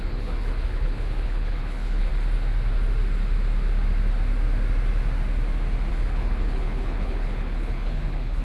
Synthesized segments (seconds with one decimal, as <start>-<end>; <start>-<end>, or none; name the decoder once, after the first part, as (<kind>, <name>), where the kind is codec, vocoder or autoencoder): 0.0-2.1 (codec, HILCodec); 5.9-8.4